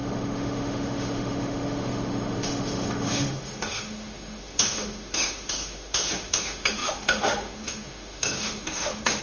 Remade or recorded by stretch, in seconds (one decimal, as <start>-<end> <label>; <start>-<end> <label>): 0.0-9.2 remade

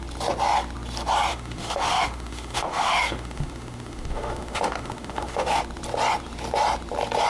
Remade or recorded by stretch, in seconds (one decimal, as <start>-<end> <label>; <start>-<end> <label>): 0.0-1.3 recorded; 1.3-5.6 remade; 5.6-7.3 recorded

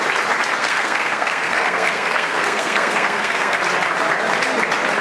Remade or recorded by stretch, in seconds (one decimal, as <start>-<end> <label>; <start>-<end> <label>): 0.0-0.6 recorded; 0.6-3.6 remade; 3.6-5.0 recorded